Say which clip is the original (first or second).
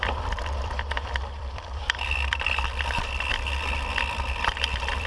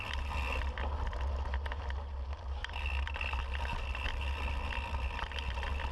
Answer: second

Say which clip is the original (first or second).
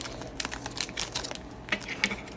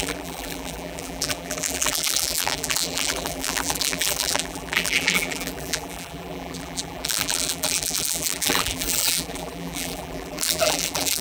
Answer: first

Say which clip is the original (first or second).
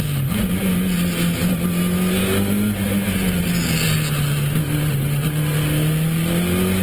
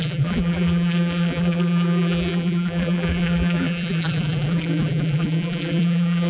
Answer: first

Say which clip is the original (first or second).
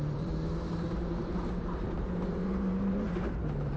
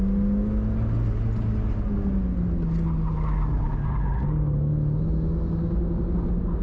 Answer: second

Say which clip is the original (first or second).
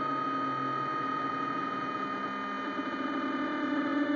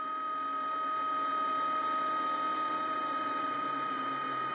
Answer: first